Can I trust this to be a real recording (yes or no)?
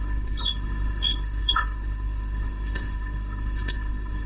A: no